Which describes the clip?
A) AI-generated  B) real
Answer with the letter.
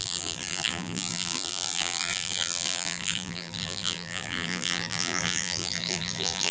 A